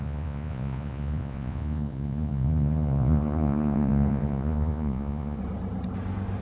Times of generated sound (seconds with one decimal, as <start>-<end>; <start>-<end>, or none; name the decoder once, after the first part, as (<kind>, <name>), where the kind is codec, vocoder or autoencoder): 0.0-5.4 (vocoder, Vocos)